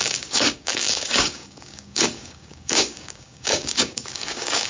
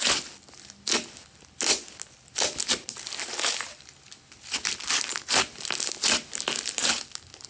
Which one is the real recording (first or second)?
second